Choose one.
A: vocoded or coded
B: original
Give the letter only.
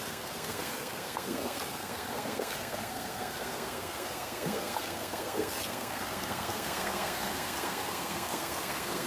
A